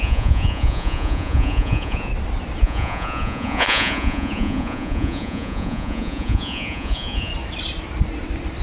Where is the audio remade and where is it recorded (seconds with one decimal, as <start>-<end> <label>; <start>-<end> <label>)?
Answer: 0.0-2.1 remade; 2.1-2.6 recorded; 2.6-7.3 remade; 7.3-8.6 recorded